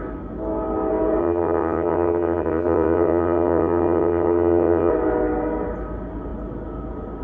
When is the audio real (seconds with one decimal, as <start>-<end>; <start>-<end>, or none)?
0.0-1.2; 4.9-7.2

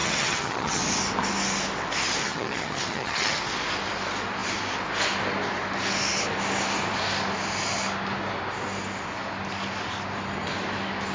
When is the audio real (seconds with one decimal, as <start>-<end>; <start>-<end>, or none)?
0.8-2.2; 3.4-11.1

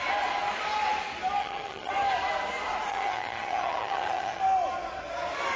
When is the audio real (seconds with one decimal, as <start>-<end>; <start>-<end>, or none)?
0.0-1.4; 1.9-2.9; 4.4-5.6

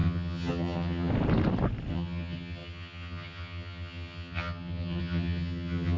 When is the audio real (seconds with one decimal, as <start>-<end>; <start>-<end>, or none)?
1.1-1.9

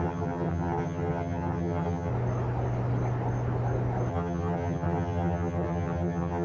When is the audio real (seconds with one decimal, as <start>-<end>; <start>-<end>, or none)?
2.1-4.1